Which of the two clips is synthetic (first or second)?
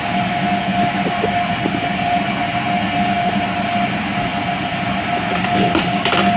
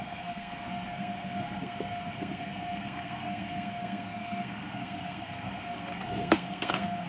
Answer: second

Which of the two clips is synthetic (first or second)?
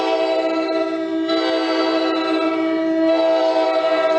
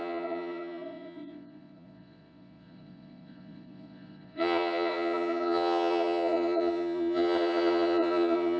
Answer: second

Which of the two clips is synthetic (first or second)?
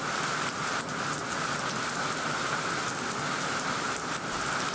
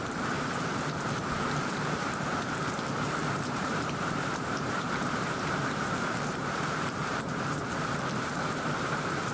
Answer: second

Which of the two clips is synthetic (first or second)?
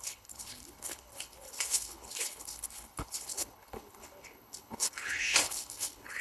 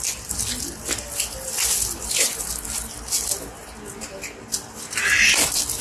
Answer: first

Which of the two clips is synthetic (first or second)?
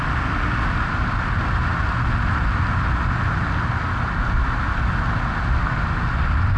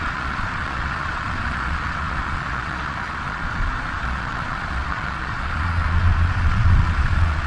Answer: second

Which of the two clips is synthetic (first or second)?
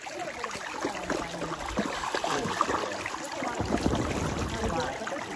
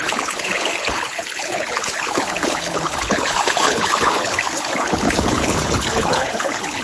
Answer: second